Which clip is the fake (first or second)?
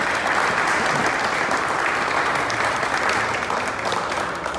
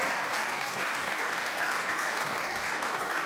second